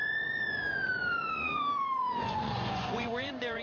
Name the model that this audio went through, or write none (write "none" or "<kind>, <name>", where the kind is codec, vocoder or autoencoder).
vocoder, Vocos